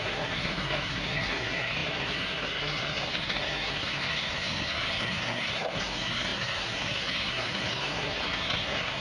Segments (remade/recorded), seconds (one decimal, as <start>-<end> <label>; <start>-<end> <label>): 0.0-9.0 remade

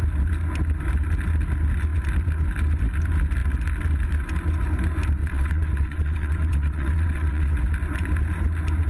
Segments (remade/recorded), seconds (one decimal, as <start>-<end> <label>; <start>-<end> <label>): 0.0-5.2 recorded; 5.2-7.5 remade; 7.5-8.9 recorded

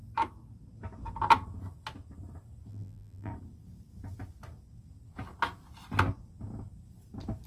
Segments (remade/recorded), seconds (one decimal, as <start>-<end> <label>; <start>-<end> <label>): 0.0-2.7 recorded; 2.7-3.3 remade; 3.3-7.5 recorded

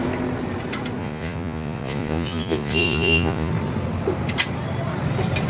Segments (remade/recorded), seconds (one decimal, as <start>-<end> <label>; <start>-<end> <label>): 0.0-1.0 recorded; 1.0-3.5 remade; 3.5-5.5 recorded

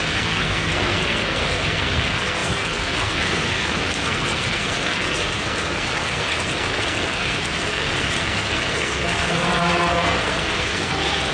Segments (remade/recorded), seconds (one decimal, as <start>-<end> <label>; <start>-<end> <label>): 0.0-11.3 remade

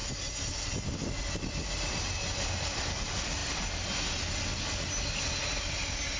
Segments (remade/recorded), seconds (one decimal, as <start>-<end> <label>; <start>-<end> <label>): 0.0-6.2 recorded